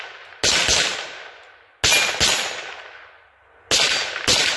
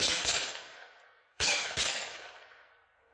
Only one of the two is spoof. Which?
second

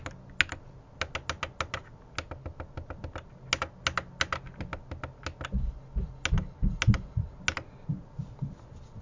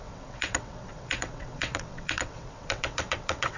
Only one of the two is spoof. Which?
second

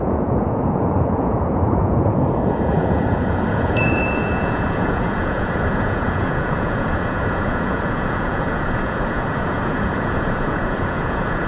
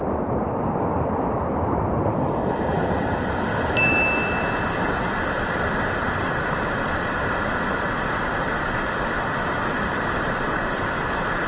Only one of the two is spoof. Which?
first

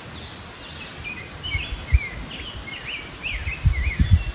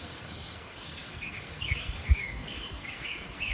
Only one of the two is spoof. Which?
second